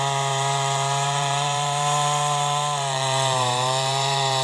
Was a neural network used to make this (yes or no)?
yes